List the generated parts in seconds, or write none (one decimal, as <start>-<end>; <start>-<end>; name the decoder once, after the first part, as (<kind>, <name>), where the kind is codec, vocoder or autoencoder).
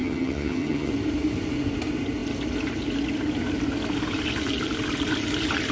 0.0-0.9 (vocoder, HiFi-GAN)